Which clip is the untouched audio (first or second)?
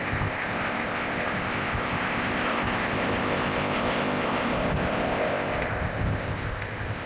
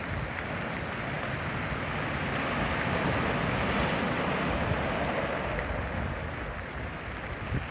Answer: second